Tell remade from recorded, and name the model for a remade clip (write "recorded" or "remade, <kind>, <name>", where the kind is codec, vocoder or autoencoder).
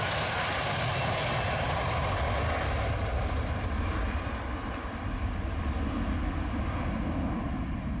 recorded